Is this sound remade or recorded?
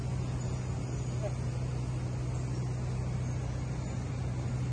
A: recorded